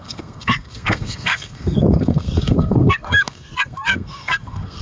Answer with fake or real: fake